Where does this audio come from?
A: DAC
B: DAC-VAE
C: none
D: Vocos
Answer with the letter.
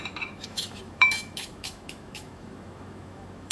B